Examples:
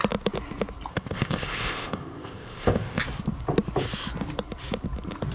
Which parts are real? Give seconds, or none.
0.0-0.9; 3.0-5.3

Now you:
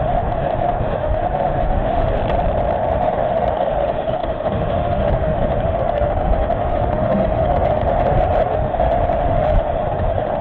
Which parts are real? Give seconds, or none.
2.2-2.9

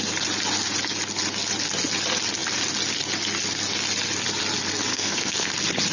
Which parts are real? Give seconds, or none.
0.0-4.9; 5.5-5.9